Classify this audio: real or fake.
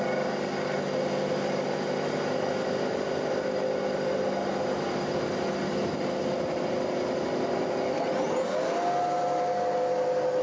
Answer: real